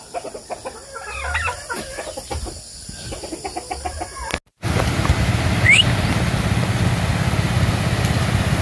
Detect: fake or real real